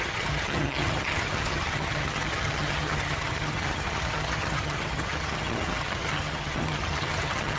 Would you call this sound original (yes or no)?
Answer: no